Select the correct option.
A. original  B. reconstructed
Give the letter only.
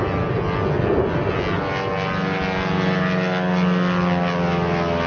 A